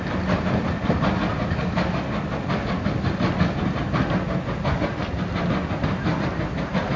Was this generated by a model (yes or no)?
no